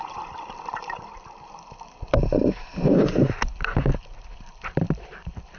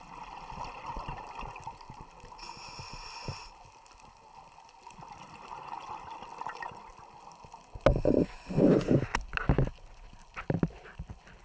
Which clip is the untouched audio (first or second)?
second